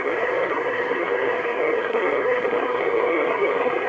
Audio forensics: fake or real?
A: fake